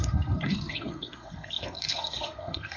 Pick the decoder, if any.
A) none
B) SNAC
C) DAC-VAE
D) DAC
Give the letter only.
B